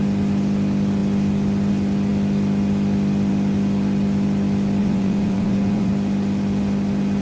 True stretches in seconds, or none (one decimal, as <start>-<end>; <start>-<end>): 0.0-4.8; 5.9-7.2